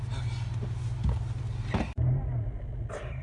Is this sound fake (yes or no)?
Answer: no